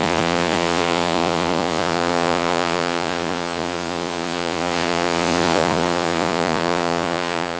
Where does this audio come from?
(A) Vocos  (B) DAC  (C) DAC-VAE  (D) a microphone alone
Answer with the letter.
A